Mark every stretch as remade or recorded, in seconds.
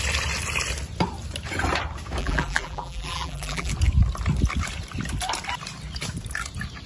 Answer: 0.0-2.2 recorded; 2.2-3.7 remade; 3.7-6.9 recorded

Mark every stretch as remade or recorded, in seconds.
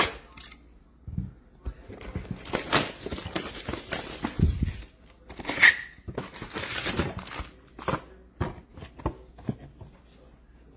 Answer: 0.0-10.8 recorded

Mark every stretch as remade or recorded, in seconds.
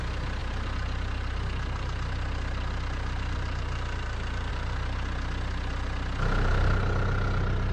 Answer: 0.0-7.7 recorded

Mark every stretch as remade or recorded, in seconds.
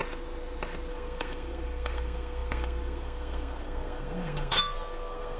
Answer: 0.0-0.9 recorded; 0.9-5.4 remade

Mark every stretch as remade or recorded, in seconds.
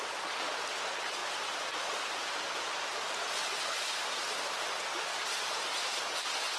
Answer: 0.0-6.6 recorded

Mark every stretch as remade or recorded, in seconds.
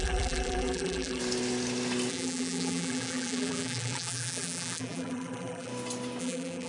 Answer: 0.0-1.2 remade; 1.2-2.1 recorded; 2.1-5.7 remade; 5.7-6.2 recorded; 6.2-6.7 remade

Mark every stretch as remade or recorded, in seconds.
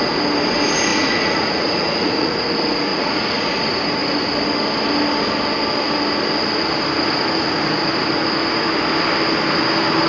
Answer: 0.0-0.9 recorded; 0.9-2.5 remade; 2.5-2.9 recorded; 2.9-3.4 remade; 3.4-10.1 recorded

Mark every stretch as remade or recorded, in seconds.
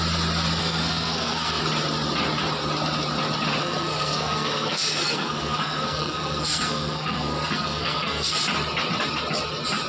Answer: 0.0-0.6 recorded; 0.6-1.6 remade; 1.6-3.6 recorded; 3.6-8.4 remade; 8.4-9.9 recorded